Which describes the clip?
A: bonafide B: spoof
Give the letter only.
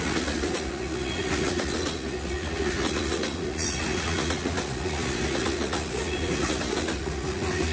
B